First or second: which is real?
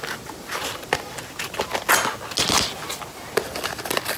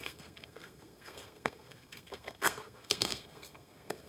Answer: first